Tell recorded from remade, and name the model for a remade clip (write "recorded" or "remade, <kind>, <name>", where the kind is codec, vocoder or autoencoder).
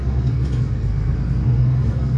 remade, codec, SNAC